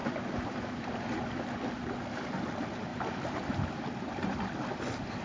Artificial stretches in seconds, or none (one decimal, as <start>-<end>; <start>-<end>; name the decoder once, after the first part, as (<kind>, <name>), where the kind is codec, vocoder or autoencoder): 0.0-1.4 (vocoder, BigVGAN v2); 2.9-3.5

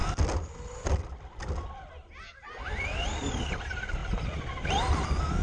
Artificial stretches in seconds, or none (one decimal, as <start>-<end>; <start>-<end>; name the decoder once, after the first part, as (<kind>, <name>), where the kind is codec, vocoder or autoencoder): 3.2-4.0 (vocoder, BigVGAN v2); 4.9-5.4

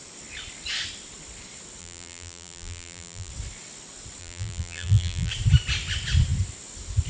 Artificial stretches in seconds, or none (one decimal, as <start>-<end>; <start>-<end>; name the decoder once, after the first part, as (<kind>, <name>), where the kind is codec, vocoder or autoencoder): 1.8-3.3 (vocoder, BigVGAN v2); 4.2-5.3

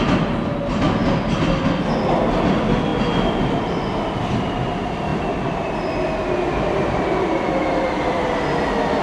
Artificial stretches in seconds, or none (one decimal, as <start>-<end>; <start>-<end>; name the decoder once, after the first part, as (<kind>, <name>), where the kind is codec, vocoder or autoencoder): none

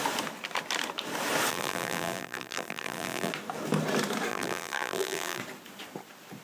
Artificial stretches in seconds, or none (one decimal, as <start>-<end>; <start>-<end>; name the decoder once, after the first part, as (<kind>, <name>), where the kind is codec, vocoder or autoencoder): 1.5-3.3 (vocoder, BigVGAN v2); 4.3-5.4

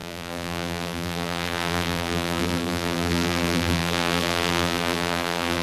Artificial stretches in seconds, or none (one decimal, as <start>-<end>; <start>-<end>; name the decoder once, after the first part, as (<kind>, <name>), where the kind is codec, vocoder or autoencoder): 0.0-5.6 (vocoder, BigVGAN v2)

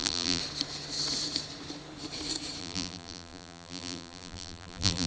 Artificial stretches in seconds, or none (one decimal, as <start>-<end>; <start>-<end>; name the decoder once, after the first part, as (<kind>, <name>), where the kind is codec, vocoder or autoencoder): 0.0-0.4 (vocoder, BigVGAN v2); 2.6-5.1